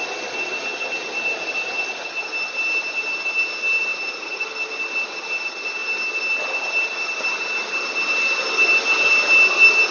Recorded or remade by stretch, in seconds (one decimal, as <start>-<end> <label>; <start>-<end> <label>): 0.0-3.9 recorded; 3.9-4.4 remade; 4.4-9.9 recorded